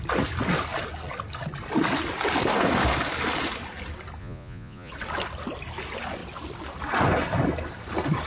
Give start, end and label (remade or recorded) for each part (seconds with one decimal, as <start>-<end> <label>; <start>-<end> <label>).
0.0-4.2 recorded; 4.2-4.9 remade; 4.9-8.3 recorded